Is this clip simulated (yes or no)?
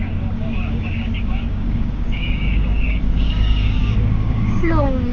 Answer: yes